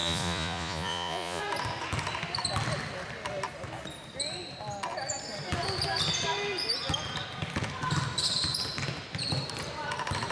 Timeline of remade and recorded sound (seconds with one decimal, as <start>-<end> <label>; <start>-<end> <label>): 0.0-1.4 remade; 1.4-10.3 recorded